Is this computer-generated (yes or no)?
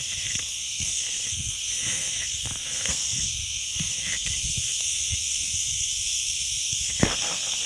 yes